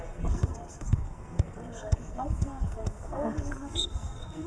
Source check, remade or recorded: remade